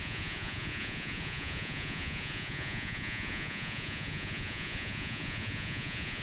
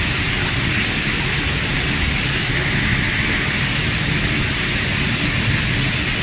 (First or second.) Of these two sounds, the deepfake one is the first